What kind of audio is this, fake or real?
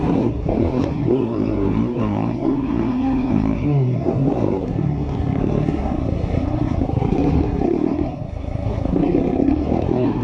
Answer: fake